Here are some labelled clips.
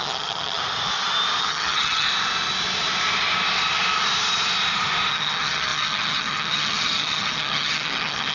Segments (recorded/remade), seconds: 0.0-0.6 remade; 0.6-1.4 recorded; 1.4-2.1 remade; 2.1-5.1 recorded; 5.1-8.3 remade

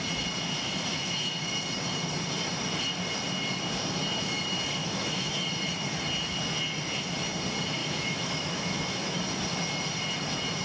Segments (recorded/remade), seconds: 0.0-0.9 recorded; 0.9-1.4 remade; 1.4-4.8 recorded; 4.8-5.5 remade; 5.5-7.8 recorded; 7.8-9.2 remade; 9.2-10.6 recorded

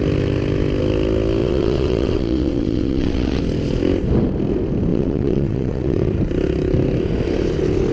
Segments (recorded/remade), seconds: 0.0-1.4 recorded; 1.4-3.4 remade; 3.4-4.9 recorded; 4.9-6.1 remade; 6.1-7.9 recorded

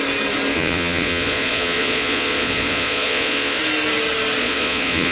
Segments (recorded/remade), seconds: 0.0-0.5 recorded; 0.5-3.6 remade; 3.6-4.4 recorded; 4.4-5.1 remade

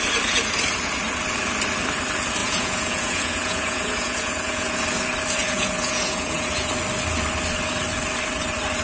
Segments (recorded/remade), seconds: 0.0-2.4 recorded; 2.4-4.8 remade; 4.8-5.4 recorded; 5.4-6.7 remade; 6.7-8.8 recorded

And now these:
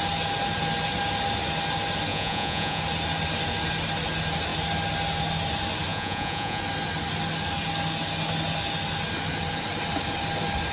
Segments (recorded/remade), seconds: 0.0-2.1 recorded; 2.1-2.8 remade; 2.8-5.9 recorded; 5.9-6.6 remade; 6.6-10.7 recorded